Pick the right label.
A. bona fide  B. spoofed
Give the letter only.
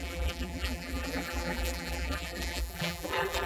B